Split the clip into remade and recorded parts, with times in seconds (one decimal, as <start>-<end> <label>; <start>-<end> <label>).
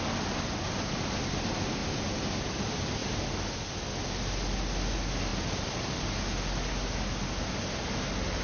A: 0.0-1.8 recorded; 1.8-2.6 remade; 2.6-3.0 recorded; 3.0-3.7 remade; 3.7-8.4 recorded